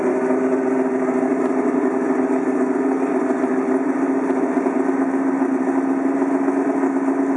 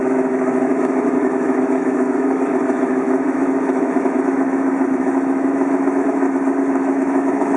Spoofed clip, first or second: second